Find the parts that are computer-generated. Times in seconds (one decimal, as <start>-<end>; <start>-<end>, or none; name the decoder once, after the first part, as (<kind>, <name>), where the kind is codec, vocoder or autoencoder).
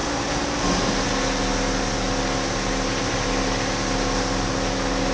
none